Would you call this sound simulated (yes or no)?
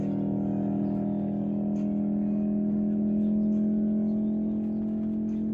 no